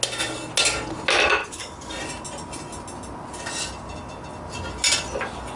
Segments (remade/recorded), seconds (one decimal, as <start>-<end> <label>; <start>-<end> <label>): 0.0-1.4 recorded; 1.4-1.9 remade; 1.9-5.6 recorded